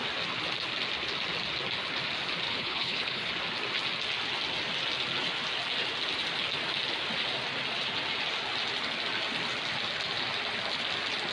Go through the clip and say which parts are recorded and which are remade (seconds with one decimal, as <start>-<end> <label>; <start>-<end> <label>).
0.0-2.5 recorded; 2.5-3.3 remade; 3.3-11.3 recorded

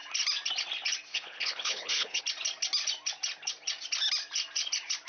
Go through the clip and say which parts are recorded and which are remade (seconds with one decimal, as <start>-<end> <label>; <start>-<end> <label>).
0.0-1.1 recorded; 1.1-2.2 remade; 2.2-5.1 recorded

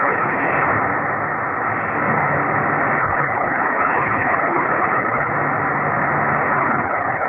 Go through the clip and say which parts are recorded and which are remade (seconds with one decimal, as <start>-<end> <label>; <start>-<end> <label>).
0.0-0.5 remade; 0.5-3.0 recorded; 3.0-5.3 remade; 5.3-6.5 recorded; 6.5-7.3 remade

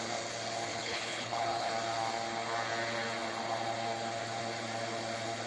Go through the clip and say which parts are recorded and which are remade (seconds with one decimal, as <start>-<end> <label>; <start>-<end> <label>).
0.0-0.7 recorded; 0.7-1.7 remade; 1.7-5.5 recorded